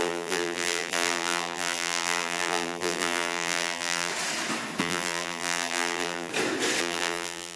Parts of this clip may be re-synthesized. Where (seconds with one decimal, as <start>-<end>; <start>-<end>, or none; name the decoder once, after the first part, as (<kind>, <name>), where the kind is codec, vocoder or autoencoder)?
0.0-4.1 (vocoder, BigVGAN v2); 4.8-6.3; 6.8-7.6